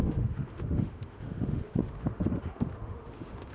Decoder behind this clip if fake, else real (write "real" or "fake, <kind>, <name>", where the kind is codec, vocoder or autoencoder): fake, autoencoder, DAC-VAE